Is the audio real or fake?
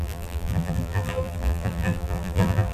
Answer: fake